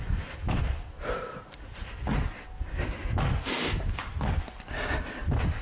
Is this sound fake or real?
real